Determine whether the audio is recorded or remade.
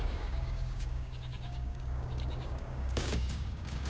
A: remade